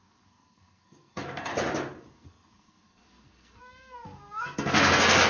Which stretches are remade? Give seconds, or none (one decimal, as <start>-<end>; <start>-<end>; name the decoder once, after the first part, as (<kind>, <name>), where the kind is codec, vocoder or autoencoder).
0.0-1.5 (codec, SNAC); 2.1-5.3